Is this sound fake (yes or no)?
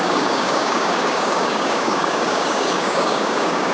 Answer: yes